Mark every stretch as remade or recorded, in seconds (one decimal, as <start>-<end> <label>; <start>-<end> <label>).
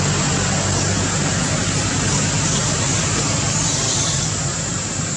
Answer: 0.0-5.2 recorded